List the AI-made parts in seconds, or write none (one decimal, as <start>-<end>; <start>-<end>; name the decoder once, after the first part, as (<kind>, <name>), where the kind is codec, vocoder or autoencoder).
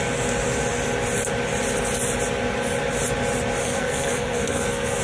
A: 3.6-5.0 (codec, SNAC)